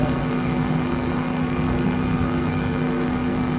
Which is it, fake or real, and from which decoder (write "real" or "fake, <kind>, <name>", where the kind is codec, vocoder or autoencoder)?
fake, codec, SNAC